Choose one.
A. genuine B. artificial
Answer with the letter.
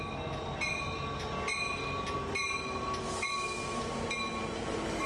A